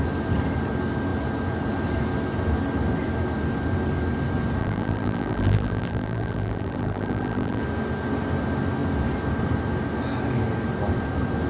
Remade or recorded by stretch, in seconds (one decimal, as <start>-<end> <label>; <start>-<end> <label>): 0.0-4.6 recorded; 4.6-7.6 remade; 7.6-11.5 recorded